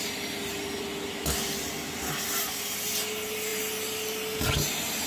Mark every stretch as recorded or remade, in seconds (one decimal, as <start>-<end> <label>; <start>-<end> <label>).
0.0-5.1 recorded